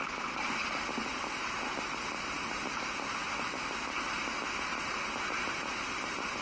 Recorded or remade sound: recorded